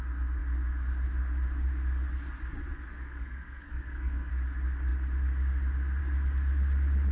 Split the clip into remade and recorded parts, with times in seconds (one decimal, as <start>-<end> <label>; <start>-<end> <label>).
0.0-2.9 recorded; 2.9-4.3 remade; 4.3-7.1 recorded